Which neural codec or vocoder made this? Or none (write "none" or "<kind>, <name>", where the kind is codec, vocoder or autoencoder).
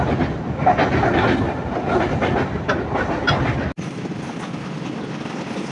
none